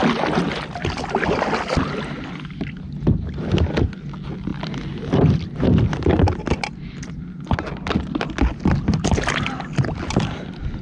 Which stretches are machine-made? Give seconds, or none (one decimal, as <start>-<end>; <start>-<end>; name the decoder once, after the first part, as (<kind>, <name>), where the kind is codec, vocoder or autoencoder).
none